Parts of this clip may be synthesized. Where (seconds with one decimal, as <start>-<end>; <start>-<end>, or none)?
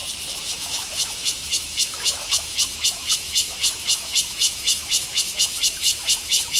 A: 0.5-6.6